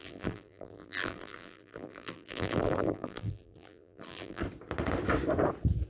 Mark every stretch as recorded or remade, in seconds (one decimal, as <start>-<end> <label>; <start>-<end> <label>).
0.0-4.4 remade; 4.4-5.9 recorded